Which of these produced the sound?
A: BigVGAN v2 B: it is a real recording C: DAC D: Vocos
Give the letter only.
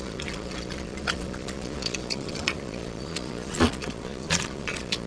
D